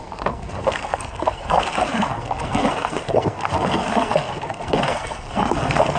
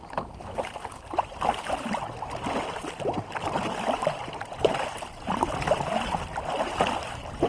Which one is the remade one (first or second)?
first